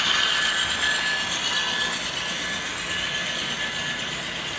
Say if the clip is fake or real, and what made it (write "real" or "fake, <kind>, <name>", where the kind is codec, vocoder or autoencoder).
real